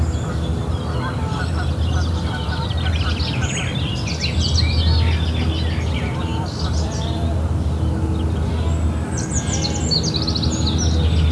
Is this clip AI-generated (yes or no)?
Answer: no